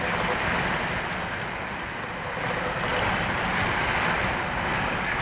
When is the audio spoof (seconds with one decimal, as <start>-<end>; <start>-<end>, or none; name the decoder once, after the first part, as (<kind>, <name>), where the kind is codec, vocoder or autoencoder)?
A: none